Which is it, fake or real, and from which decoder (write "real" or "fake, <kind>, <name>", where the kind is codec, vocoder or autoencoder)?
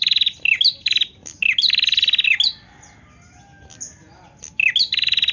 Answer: real